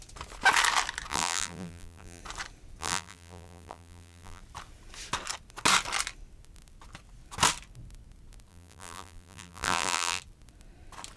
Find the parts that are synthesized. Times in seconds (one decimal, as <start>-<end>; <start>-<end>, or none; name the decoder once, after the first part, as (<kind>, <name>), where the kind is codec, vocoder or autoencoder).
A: 1.1-2.2 (vocoder, BigVGAN v2); 2.8-4.4; 8.5-10.2